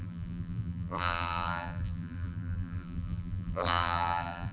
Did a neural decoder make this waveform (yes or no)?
yes